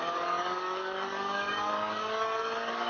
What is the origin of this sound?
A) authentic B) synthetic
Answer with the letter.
B